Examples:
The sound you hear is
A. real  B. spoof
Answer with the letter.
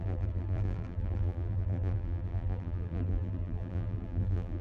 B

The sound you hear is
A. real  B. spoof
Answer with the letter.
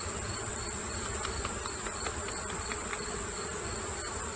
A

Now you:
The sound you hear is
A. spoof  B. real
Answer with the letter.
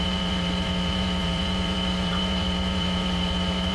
A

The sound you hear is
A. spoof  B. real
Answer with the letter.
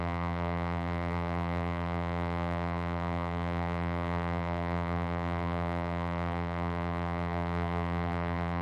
A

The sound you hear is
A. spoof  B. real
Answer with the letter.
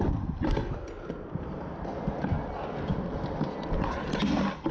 B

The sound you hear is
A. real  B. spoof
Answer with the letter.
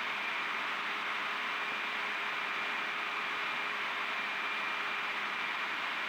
B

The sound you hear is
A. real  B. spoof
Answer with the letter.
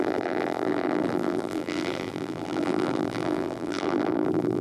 B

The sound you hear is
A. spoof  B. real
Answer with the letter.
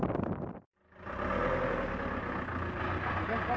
B